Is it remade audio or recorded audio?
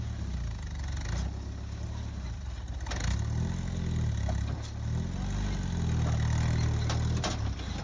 recorded